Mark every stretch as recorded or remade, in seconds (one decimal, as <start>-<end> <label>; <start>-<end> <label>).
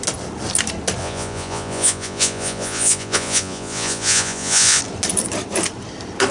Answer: 0.0-1.0 recorded; 1.0-4.8 remade; 4.8-6.3 recorded